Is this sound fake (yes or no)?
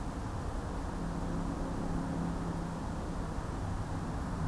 no